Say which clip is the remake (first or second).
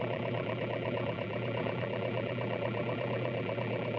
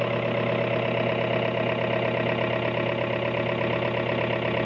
first